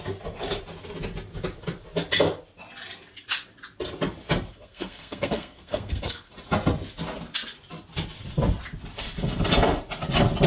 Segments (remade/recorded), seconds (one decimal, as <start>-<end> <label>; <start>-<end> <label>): 0.0-4.5 recorded; 4.5-6.3 remade; 6.3-10.5 recorded